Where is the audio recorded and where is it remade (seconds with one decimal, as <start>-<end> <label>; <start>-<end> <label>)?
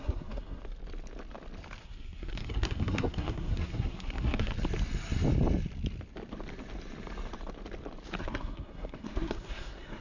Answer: 0.0-0.6 remade; 0.6-1.8 recorded; 1.8-4.5 remade; 4.5-8.2 recorded; 8.2-10.0 remade